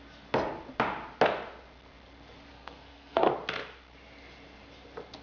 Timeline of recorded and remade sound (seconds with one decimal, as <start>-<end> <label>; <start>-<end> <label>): 0.0-2.5 recorded; 2.5-3.3 remade; 3.3-5.2 recorded